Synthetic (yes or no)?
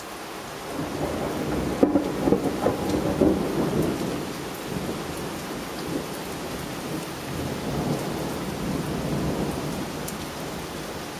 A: no